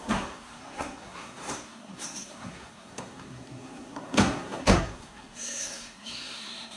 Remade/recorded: remade